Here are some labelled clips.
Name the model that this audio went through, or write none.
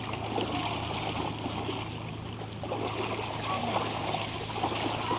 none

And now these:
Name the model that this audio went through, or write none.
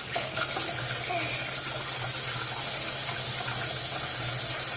none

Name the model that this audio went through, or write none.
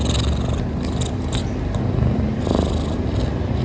none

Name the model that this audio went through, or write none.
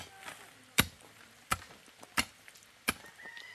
none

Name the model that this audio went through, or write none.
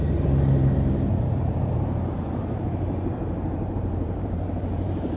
vocoder, BigVGAN v2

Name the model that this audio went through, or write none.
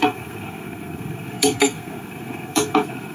codec, SNAC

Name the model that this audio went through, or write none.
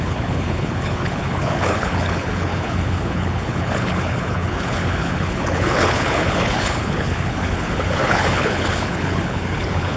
codec, HILCodec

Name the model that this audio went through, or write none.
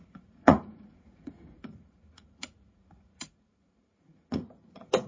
vocoder, Vocos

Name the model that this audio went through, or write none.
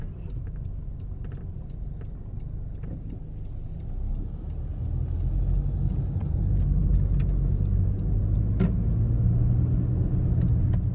none